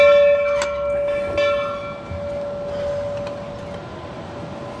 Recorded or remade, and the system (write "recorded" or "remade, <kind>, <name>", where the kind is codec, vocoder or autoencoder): recorded